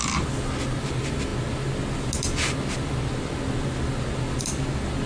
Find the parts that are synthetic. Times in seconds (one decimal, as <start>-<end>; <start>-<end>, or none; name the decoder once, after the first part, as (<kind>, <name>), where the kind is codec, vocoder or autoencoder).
none